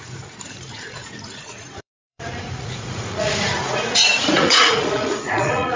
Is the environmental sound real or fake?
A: fake